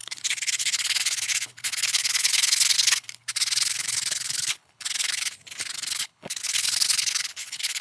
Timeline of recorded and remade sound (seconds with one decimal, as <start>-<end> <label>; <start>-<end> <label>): 0.0-5.3 remade; 5.3-5.9 recorded; 5.9-7.8 remade